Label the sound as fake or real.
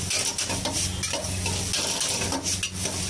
real